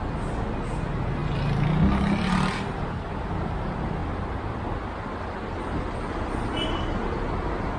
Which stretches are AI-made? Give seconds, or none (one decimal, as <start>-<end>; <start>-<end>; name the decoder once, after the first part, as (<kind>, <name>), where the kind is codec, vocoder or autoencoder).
none